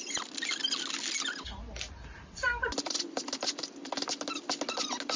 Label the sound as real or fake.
real